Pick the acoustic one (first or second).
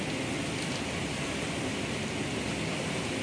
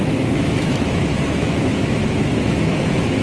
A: first